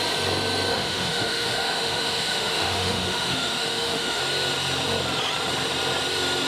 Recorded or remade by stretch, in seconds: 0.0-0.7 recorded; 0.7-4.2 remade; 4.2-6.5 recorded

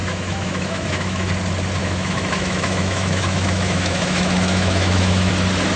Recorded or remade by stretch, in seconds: 0.0-1.3 remade; 1.3-1.8 recorded; 1.8-5.3 remade; 5.3-5.8 recorded

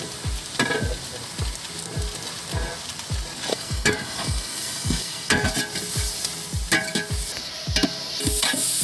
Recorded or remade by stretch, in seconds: 0.0-3.5 recorded; 3.5-5.5 remade; 5.5-8.8 recorded

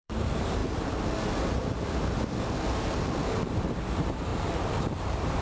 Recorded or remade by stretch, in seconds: 0.0-0.6 remade; 0.6-3.4 recorded; 3.4-5.4 remade

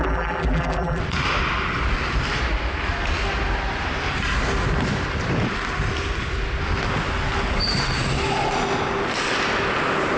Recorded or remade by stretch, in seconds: 0.0-1.0 remade; 1.0-10.2 recorded

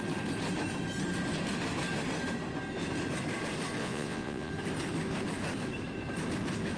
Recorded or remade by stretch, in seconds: 0.0-3.8 recorded; 3.8-4.5 remade; 4.5-6.8 recorded

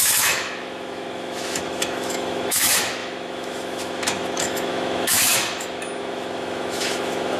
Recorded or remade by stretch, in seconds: 0.0-7.4 remade

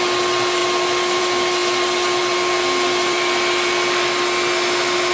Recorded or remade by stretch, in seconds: 0.0-5.1 recorded